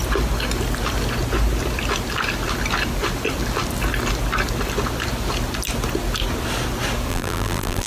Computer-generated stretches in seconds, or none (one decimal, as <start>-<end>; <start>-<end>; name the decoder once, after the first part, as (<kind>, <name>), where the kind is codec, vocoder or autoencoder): 7.1-7.9 (vocoder, BigVGAN v2)